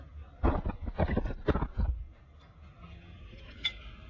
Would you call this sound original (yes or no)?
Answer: yes